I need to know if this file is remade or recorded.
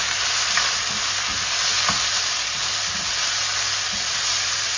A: recorded